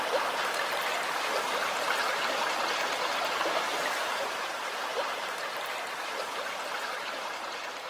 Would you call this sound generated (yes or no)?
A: yes